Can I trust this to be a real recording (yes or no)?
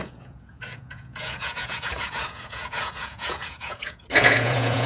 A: no